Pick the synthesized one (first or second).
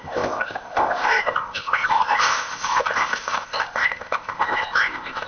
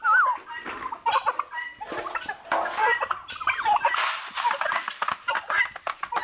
first